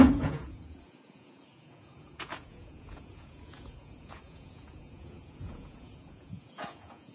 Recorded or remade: remade